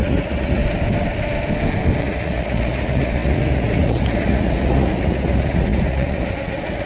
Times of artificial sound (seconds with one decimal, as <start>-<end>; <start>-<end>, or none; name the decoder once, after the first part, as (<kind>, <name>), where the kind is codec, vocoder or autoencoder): 0.0-0.6 (vocoder, Vocos); 2.0-6.9